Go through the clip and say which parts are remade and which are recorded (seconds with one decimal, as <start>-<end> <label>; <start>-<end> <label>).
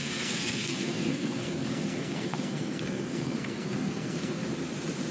0.0-4.4 remade; 4.4-5.1 recorded